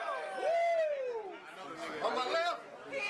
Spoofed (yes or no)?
no